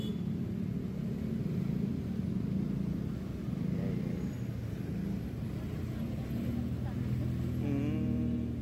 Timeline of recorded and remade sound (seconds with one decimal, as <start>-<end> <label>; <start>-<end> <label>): 0.0-8.6 recorded